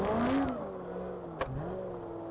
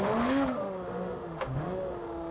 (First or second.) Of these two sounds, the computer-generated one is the second